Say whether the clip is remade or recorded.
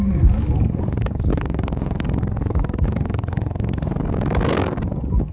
remade